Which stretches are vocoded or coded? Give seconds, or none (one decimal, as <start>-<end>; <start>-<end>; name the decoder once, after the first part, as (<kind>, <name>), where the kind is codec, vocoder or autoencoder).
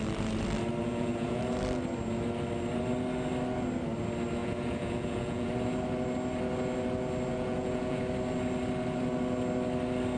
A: 0.8-1.4 (vocoder, Vocos); 4.4-5.5; 7.3-8.0